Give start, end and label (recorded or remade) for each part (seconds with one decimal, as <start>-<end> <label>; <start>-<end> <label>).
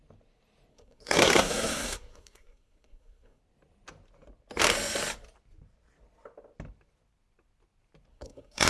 0.0-0.7 recorded; 0.7-3.4 remade; 3.4-8.1 recorded; 8.1-8.7 remade